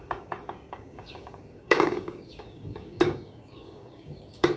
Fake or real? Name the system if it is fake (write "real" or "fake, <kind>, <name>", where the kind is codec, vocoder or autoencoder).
fake, codec, DAC